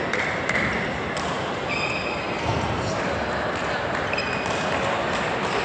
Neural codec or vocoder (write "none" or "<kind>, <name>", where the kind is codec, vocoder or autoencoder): none